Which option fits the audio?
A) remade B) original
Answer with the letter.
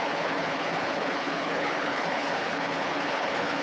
A